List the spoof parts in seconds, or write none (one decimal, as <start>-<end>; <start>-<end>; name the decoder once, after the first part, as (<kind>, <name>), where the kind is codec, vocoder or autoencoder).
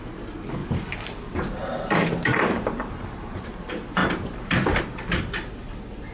0.6-3.4 (vocoder, BigVGAN v2); 4.0-4.8